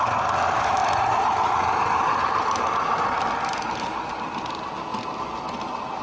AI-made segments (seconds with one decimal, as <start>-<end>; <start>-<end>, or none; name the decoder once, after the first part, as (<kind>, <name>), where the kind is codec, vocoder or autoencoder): none